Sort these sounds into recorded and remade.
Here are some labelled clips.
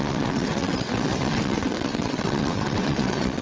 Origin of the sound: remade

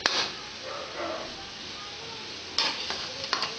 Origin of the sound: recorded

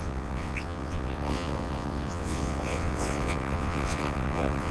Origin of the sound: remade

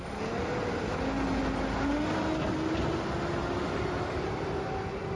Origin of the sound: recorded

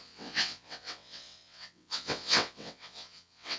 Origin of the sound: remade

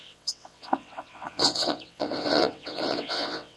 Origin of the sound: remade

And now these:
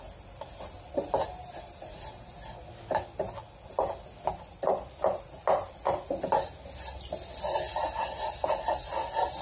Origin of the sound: recorded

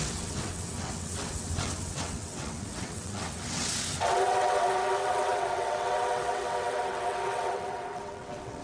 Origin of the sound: remade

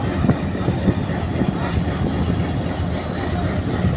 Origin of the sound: recorded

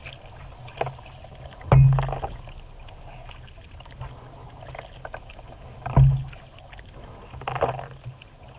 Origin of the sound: recorded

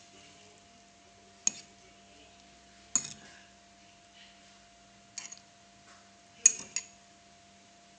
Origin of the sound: recorded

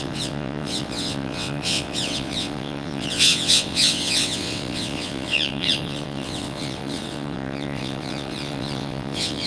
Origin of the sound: remade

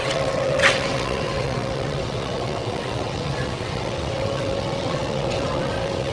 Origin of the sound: remade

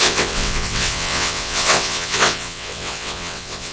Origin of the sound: remade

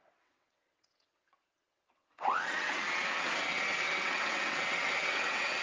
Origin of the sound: remade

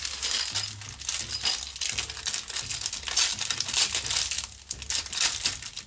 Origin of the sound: recorded